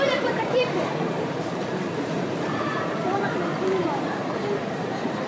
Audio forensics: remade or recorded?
remade